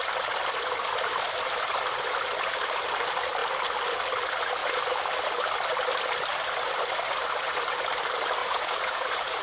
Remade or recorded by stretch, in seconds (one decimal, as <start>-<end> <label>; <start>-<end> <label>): 0.0-8.4 recorded; 8.4-9.4 remade